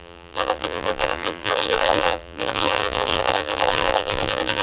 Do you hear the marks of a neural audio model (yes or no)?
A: yes